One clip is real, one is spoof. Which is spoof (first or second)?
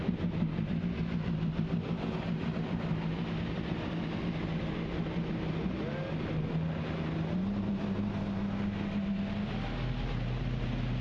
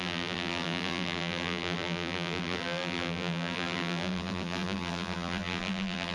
second